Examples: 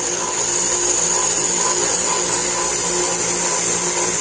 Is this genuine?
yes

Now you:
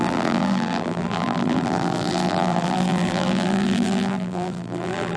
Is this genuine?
no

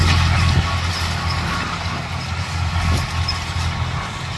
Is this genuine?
yes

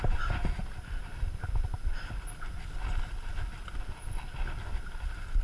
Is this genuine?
yes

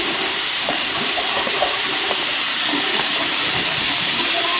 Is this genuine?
no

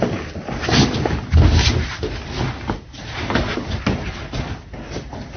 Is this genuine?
yes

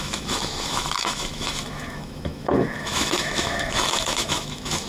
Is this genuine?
no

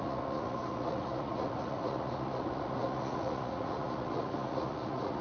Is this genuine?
no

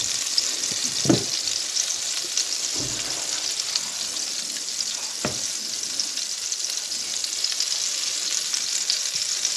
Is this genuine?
yes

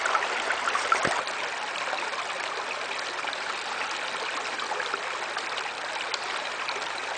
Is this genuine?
yes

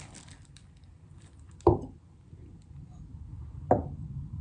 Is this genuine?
yes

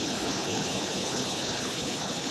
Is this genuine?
no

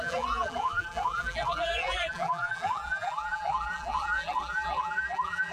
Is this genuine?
no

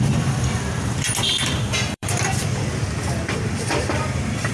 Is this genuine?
no